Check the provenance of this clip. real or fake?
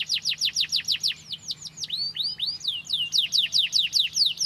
real